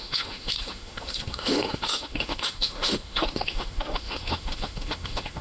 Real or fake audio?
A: fake